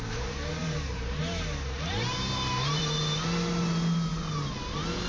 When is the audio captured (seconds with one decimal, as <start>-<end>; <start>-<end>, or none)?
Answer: 0.0-0.6; 1.2-2.1; 2.8-5.1

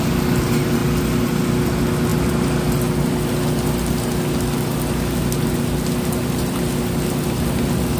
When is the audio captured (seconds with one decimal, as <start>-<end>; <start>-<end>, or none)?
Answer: 0.0-8.0

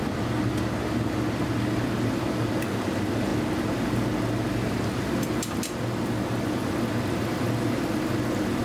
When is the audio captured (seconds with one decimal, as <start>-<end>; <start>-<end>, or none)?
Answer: 0.0-8.6

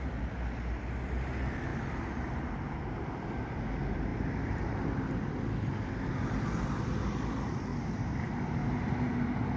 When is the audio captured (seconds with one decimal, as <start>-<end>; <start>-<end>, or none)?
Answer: 0.0-1.7; 2.8-4.1; 4.9-7.7; 8.2-9.6

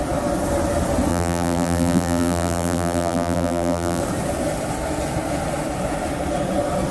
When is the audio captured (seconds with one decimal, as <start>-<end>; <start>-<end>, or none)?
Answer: 0.0-1.1; 4.0-6.9

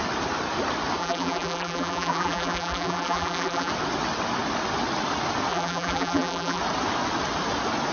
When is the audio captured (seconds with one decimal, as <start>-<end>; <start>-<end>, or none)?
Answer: 0.0-1.0; 3.7-5.5; 6.6-7.9

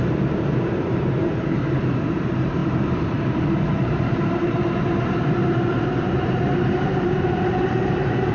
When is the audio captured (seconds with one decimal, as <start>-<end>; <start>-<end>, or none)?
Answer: none

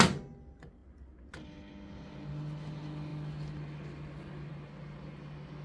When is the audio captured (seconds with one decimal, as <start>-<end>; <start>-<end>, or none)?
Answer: 0.0-5.6